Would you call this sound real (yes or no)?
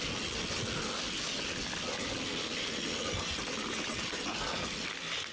yes